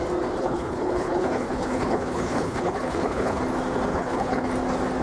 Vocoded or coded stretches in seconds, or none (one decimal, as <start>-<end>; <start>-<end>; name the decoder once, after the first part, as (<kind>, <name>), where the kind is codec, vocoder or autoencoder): 0.4-3.4 (codec, HILCodec); 3.9-4.5